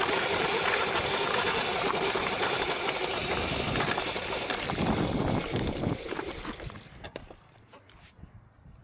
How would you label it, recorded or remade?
remade